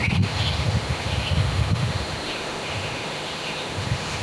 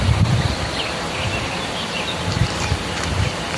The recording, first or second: second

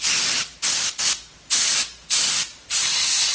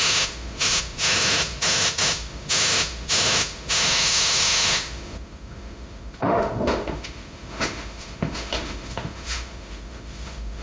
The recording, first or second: first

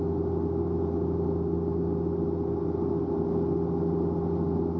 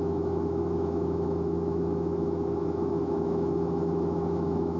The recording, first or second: first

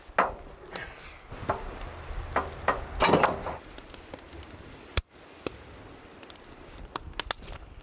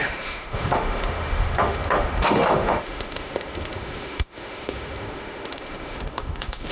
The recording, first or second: first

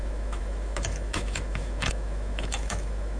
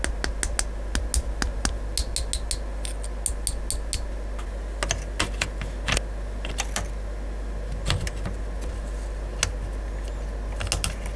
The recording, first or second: second